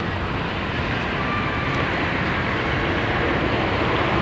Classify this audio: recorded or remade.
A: recorded